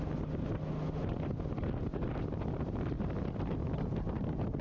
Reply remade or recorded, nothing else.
recorded